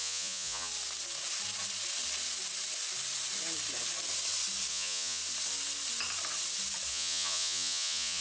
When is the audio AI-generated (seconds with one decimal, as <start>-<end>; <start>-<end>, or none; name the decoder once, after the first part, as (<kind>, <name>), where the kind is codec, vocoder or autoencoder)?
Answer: 0.0-0.7 (vocoder, Vocos); 4.7-5.2; 6.9-8.2